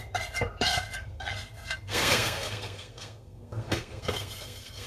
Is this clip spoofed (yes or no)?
yes